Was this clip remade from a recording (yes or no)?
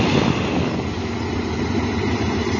no